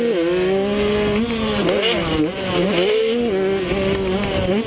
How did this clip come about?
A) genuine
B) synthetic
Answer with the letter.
A